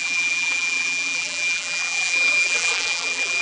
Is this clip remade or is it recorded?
remade